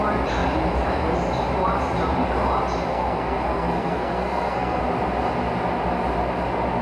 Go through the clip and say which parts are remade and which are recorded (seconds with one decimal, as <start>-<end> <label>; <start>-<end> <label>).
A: 0.0-2.9 recorded; 2.9-4.8 remade; 4.8-6.8 recorded